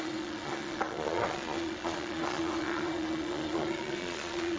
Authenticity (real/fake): fake